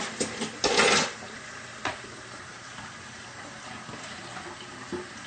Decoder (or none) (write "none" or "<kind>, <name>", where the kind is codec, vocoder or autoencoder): none